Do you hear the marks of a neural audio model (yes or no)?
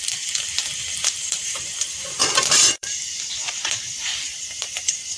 yes